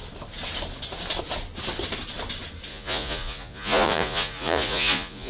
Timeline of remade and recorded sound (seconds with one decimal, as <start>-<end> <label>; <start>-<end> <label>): 0.0-2.7 recorded; 2.7-5.3 remade